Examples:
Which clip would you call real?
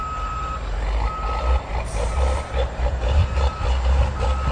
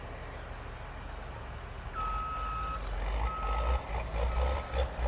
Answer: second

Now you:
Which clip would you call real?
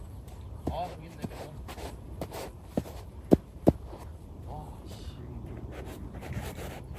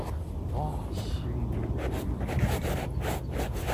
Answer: second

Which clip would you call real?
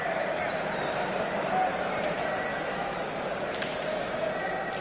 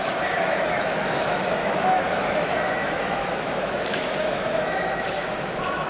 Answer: first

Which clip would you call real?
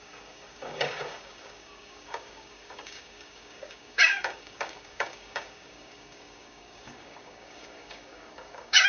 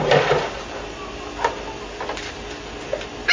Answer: second